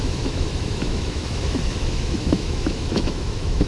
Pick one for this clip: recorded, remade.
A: remade